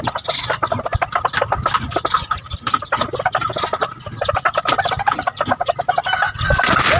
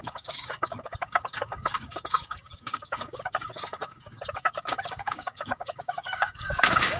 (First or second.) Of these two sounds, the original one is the first